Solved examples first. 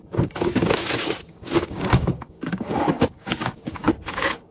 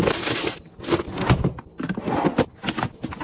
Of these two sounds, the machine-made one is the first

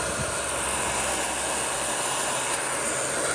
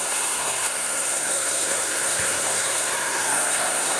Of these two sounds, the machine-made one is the second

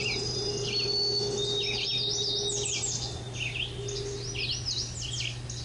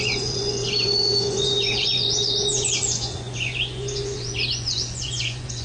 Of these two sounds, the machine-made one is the second